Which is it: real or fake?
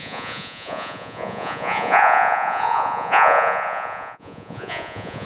fake